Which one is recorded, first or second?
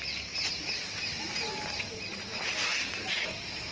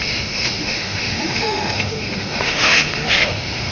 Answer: first